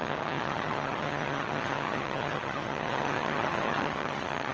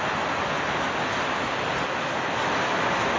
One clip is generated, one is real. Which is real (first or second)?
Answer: second